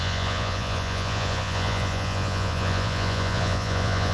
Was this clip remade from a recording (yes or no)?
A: yes